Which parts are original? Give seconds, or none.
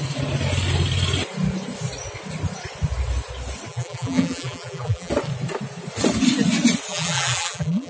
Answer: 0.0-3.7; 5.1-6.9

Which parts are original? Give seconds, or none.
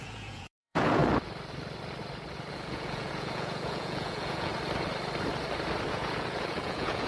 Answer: 1.0-2.5; 4.5-5.9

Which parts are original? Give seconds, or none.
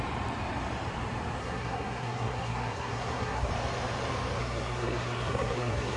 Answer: 0.0-1.4; 3.5-4.4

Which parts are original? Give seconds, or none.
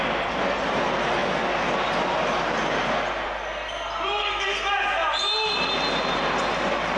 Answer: 0.0-4.2; 4.7-7.0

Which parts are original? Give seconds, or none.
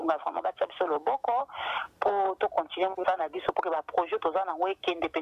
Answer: 1.4-4.5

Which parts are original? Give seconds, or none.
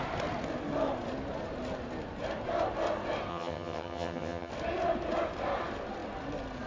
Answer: 0.0-3.3; 4.5-6.7